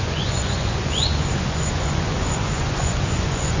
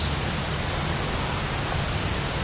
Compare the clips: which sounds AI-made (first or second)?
first